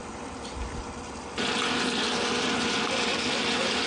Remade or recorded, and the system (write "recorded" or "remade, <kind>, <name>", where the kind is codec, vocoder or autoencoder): remade, vocoder, BigVGAN v2